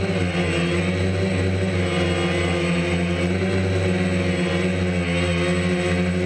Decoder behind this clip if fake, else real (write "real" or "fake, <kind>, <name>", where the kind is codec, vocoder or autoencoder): real